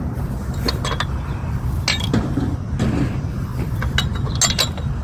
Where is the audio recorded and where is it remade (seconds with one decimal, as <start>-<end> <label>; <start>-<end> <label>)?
0.0-5.0 recorded